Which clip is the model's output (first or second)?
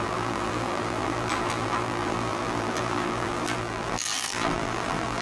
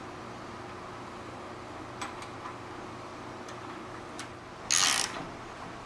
first